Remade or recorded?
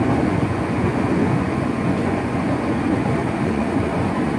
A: remade